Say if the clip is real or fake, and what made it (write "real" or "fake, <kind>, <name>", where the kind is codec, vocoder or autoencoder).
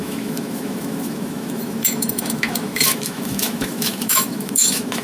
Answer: fake, autoencoder, DAC-VAE